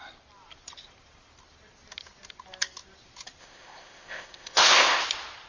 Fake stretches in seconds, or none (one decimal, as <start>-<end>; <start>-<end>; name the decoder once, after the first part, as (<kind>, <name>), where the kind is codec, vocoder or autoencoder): 3.4-5.0 (codec, ZipCodec)